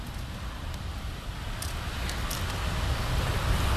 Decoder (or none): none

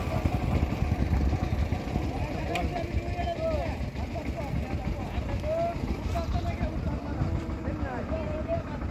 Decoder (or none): none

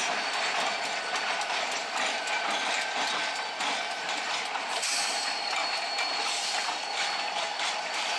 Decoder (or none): none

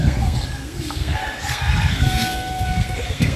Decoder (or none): codec, SNAC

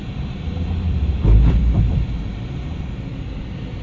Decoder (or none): none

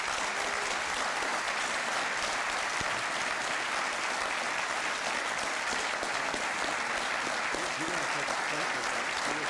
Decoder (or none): none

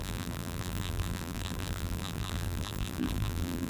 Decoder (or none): vocoder, BigVGAN v2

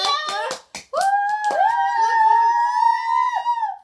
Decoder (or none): none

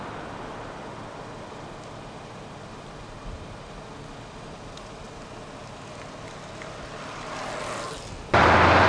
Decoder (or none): none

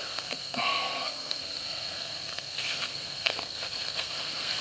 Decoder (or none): codec, SNAC